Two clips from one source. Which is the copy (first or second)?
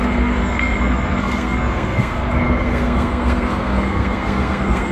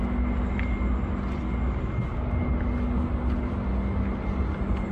first